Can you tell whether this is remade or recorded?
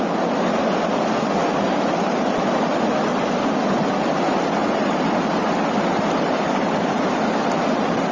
recorded